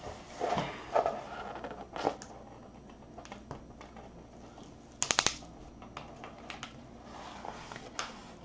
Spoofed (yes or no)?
no